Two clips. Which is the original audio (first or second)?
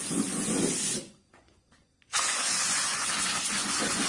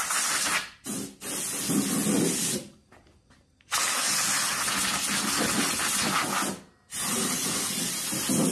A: second